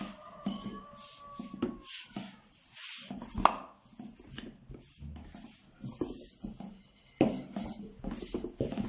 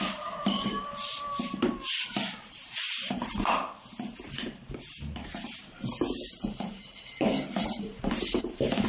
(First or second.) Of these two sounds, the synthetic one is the second